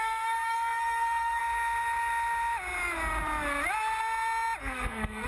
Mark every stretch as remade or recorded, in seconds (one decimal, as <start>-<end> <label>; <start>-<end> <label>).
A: 0.0-1.4 remade; 1.4-4.6 recorded; 4.6-5.3 remade